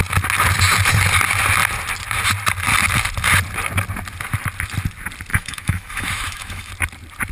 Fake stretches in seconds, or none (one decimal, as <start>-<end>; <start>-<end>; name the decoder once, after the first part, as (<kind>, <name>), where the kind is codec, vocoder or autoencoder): 5.3-6.7 (autoencoder, DAC-VAE)